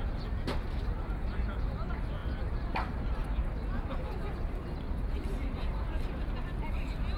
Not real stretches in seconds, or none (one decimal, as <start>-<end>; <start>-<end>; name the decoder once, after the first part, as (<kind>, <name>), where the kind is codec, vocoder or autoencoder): none